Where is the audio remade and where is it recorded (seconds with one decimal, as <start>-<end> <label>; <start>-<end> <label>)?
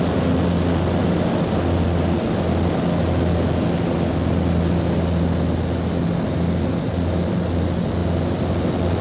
0.0-9.0 recorded